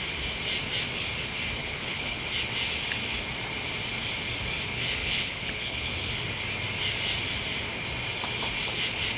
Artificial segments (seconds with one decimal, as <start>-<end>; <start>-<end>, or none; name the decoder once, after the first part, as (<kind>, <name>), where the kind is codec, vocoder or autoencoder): 1.6-2.2 (codec, HILCodec); 5.0-5.9